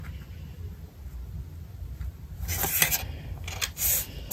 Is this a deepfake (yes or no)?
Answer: no